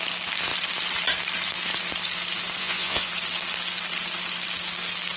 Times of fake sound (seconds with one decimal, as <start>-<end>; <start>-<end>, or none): 2.6-3.1